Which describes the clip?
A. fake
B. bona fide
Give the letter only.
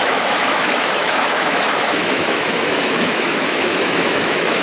A